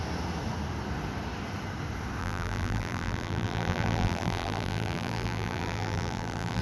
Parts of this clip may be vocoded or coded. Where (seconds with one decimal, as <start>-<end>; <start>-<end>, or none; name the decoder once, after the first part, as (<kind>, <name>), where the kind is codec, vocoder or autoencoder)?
2.2-6.6 (vocoder, BigVGAN v2)